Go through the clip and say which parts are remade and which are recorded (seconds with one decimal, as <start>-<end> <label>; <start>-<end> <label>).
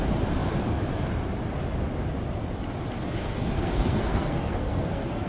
0.0-3.2 recorded; 3.2-5.3 remade